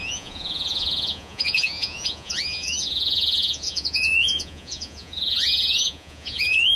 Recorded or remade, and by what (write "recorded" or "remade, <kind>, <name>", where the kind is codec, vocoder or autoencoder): remade, vocoder, Vocos